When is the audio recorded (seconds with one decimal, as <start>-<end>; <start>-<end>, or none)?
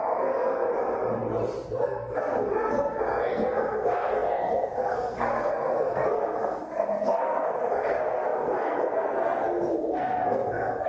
0.7-1.7